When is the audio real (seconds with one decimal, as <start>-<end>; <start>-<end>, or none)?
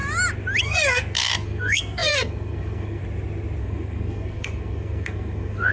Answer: 0.0-0.6; 3.0-3.6